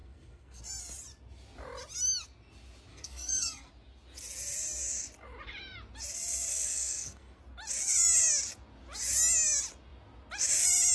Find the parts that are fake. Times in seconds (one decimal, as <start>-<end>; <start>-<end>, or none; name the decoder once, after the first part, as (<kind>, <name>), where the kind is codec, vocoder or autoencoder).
0.0-0.6 (codec, SNAC); 2.9-3.7; 6.5-7.4

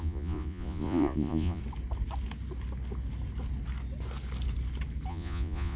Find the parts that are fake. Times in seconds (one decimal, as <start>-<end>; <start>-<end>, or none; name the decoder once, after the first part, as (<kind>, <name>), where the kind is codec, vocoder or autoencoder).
0.0-1.6 (vocoder, Vocos); 5.1-5.8

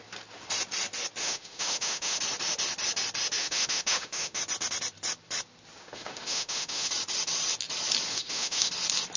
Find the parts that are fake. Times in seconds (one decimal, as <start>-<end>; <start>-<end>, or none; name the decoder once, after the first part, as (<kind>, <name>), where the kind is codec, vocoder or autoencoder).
1.2-2.2 (autoencoder, DAC-VAE); 3.4-4.4; 5.8-6.9; 8.1-8.7

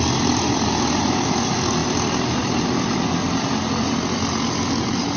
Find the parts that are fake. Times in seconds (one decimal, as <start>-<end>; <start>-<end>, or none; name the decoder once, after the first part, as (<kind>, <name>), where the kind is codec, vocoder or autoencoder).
none

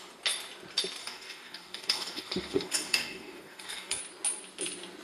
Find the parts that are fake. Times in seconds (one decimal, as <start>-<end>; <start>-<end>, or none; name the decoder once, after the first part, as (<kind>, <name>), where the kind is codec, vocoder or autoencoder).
1.0-4.0 (codec, DAC)

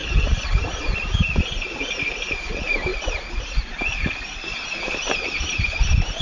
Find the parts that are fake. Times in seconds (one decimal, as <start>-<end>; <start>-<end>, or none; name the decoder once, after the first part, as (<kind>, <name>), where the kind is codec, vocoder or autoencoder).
none

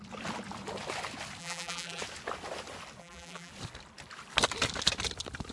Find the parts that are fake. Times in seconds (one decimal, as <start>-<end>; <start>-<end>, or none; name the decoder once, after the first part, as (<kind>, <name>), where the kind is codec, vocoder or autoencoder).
1.4-2.0 (vocoder, BigVGAN v2); 3.0-3.5

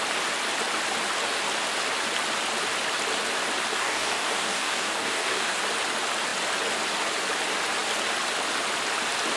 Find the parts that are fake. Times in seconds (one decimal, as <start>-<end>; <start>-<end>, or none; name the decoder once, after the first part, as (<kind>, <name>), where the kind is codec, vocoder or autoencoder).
3.7-5.6 (codec, DAC)